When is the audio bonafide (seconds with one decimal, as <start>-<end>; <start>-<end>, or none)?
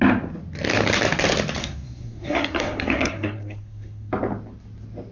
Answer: 0.0-1.6; 4.1-5.1